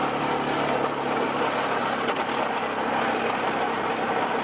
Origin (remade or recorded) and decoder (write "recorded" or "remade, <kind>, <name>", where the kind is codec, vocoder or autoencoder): recorded